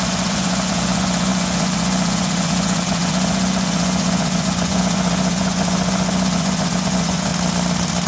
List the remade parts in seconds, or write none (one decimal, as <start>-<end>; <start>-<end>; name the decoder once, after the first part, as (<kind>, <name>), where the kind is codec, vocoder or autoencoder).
0.0-7.3 (vocoder, Vocos)